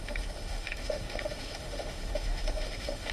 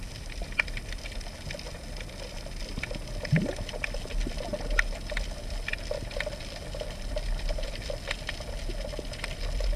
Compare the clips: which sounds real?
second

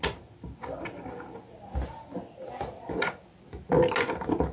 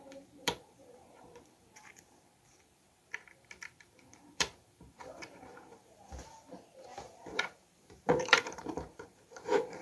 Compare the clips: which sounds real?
first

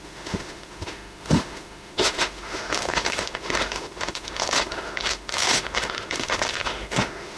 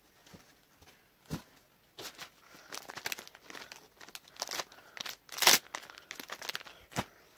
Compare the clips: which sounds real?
second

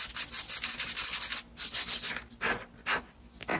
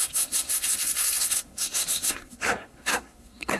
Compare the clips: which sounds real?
first